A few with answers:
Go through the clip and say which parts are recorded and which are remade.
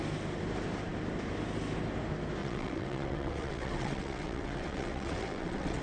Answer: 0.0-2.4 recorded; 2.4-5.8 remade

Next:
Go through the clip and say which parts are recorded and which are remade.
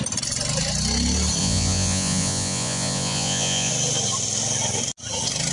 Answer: 0.0-1.4 recorded; 1.4-3.7 remade; 3.7-5.5 recorded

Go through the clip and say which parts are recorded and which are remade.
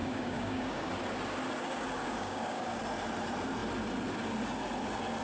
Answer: 0.0-0.9 remade; 0.9-2.0 recorded; 2.0-2.8 remade; 2.8-5.2 recorded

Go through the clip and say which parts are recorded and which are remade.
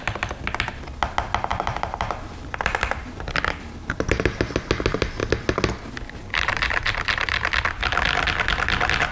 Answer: 0.0-1.5 recorded; 1.5-2.2 remade; 2.2-6.2 recorded; 6.2-7.5 remade; 7.5-9.1 recorded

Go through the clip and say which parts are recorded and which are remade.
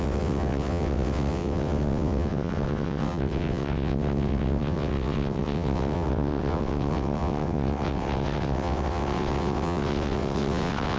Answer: 0.0-11.0 remade